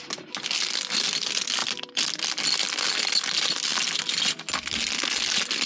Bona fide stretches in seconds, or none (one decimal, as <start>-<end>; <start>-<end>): 0.0-5.7